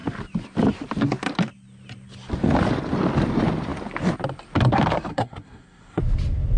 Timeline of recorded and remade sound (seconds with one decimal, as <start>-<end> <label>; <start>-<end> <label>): 0.0-5.1 recorded; 5.1-6.0 remade; 6.0-6.6 recorded